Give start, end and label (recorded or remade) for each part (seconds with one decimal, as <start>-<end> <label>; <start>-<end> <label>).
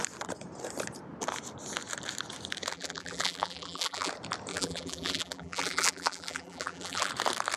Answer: 0.0-2.7 recorded; 2.7-4.1 remade; 4.1-4.5 recorded; 4.5-7.1 remade; 7.1-7.6 recorded